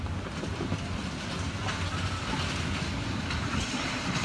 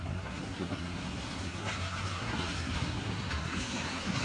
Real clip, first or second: first